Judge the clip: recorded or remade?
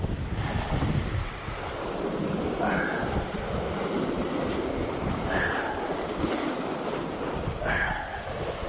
recorded